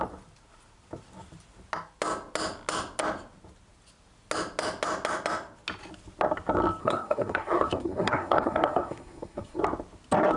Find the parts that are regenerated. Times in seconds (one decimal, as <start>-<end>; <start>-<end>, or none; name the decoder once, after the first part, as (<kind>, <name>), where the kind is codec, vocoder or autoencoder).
6.8-9.6 (codec, SNAC)